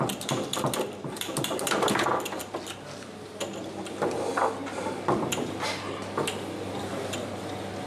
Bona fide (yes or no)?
yes